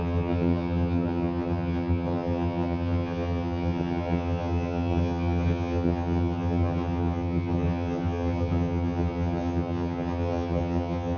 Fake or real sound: fake